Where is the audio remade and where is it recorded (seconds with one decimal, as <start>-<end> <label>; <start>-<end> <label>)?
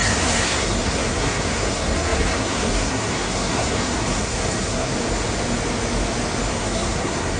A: 0.0-4.9 remade; 4.9-6.5 recorded; 6.5-7.4 remade